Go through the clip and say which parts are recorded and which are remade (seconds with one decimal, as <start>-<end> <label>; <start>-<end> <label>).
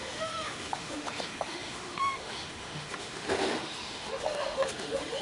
0.0-5.2 remade